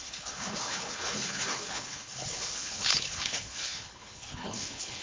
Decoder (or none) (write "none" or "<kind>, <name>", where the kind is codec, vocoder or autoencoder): codec, HILCodec